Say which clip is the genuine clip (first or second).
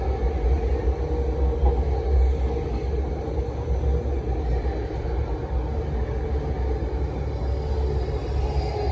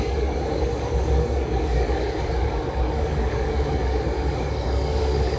first